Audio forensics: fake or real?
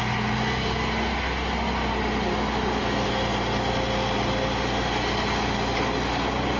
real